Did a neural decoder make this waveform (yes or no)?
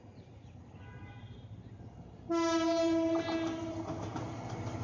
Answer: no